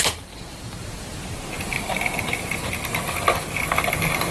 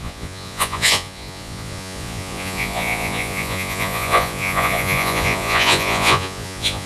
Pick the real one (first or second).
first